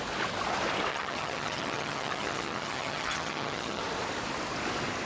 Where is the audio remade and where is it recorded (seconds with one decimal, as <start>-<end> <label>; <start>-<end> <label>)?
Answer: 0.0-0.9 recorded; 0.9-3.8 remade; 3.8-5.1 recorded